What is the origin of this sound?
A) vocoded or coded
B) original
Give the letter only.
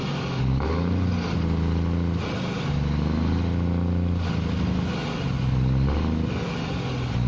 B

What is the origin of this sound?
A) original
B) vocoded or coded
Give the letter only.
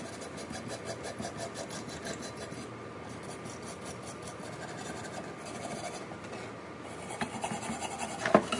A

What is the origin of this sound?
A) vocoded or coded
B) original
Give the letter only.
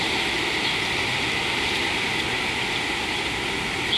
B